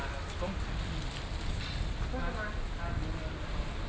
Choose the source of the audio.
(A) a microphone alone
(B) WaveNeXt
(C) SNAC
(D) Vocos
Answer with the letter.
A